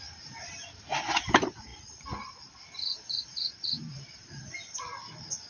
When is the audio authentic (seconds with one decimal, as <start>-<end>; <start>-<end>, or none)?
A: 0.0-1.7; 4.4-5.5